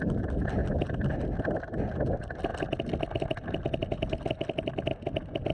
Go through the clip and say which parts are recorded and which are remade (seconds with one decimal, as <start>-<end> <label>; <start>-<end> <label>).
0.0-5.5 recorded